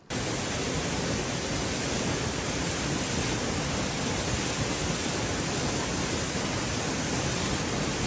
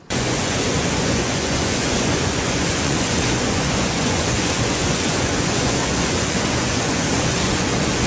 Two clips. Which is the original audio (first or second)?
first